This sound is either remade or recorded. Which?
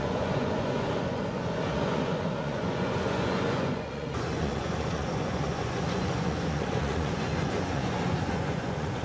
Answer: remade